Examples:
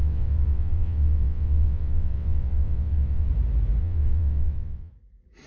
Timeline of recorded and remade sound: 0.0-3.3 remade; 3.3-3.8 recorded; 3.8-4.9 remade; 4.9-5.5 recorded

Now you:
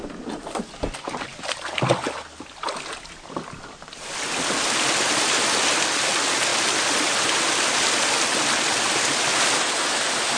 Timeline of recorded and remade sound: 0.0-10.4 recorded

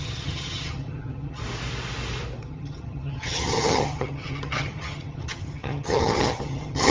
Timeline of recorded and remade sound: 0.0-1.4 remade; 1.4-2.4 recorded; 2.4-6.9 remade

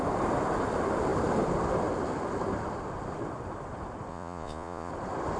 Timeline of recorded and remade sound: 0.0-4.1 recorded; 4.1-4.9 remade; 4.9-5.4 recorded

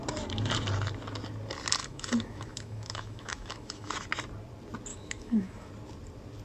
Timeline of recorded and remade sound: 0.0-1.8 recorded; 1.8-3.9 remade; 3.9-4.9 recorded; 4.9-5.7 remade; 5.7-6.4 recorded

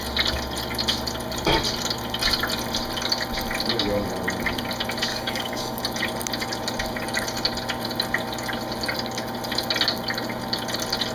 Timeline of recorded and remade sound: 0.0-5.1 recorded; 5.1-5.8 remade; 5.8-11.1 recorded